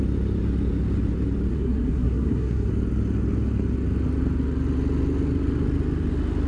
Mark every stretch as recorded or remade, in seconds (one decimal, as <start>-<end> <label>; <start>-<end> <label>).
0.0-1.5 recorded; 1.5-2.7 remade; 2.7-6.5 recorded